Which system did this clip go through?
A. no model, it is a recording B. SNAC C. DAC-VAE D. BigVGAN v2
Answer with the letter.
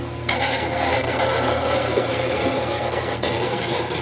B